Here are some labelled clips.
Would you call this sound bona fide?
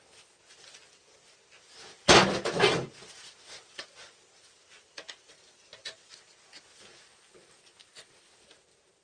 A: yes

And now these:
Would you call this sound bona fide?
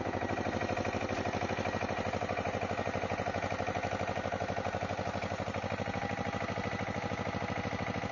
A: yes